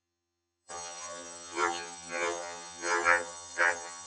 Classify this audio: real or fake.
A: fake